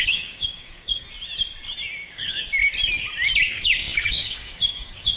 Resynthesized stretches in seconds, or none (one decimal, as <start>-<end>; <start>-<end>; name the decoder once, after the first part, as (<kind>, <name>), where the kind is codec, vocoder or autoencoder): 0.0-1.1 (codec, DAC); 2.1-2.5; 3.5-5.2